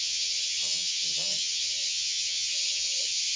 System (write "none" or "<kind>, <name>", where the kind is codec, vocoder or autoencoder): vocoder, HiFi-GAN